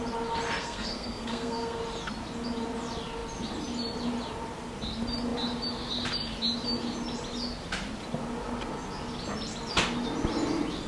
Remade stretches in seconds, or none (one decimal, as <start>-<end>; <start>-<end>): 0.6-1.8